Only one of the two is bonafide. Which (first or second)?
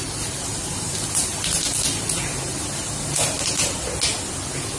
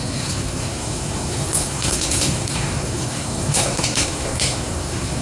first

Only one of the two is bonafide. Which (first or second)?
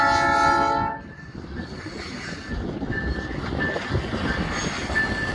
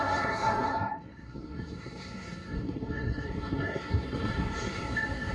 first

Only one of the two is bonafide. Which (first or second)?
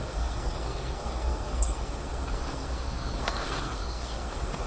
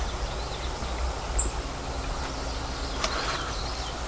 second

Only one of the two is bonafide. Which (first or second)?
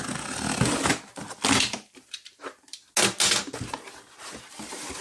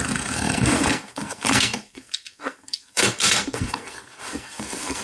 first